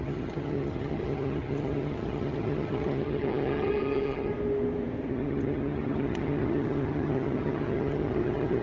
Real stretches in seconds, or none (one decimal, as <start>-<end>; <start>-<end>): 4.3-5.1